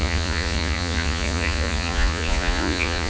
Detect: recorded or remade remade